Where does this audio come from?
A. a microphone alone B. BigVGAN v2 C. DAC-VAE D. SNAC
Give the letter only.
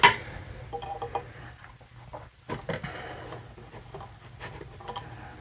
A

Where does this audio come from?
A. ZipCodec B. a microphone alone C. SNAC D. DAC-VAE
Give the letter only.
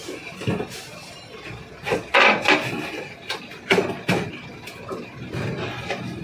B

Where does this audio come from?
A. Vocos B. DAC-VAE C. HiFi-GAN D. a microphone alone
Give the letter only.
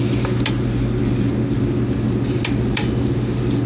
D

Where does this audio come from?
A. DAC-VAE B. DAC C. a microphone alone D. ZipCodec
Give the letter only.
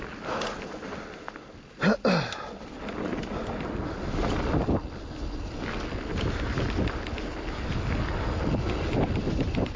C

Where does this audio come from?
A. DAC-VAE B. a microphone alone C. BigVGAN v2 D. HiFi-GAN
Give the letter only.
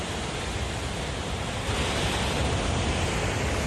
B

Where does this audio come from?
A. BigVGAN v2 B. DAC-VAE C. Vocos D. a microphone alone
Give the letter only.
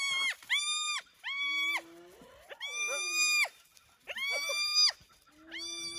D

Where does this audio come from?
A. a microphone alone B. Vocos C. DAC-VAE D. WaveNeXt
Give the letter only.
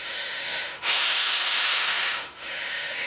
C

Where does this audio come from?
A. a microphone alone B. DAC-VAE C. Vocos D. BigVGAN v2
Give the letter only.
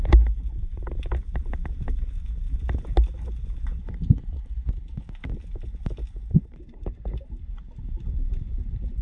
A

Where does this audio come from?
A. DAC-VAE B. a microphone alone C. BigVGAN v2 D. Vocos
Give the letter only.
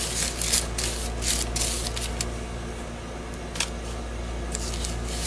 B